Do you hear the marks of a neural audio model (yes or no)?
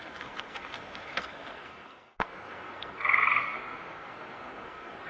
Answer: yes